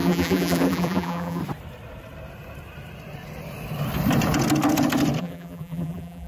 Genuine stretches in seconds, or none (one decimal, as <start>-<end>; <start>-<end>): 1.4-5.2

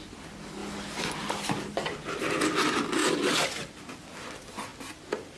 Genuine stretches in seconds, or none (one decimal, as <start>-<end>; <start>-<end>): 0.0-3.0; 3.9-5.4